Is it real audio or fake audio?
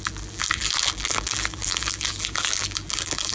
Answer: fake